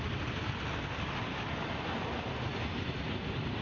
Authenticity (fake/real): real